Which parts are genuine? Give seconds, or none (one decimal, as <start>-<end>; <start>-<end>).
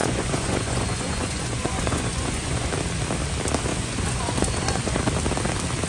2.7-3.7; 5.0-5.9